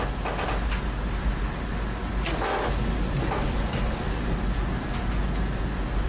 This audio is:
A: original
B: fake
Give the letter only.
A